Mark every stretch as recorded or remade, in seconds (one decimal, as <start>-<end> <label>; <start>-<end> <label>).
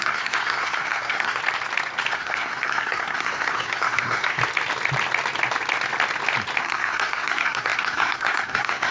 0.0-1.4 remade; 1.4-2.1 recorded; 2.1-4.4 remade; 4.4-6.6 recorded; 6.6-8.9 remade